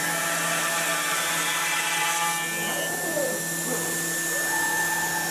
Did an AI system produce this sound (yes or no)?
no